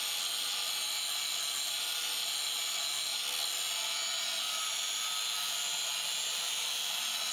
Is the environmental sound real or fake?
real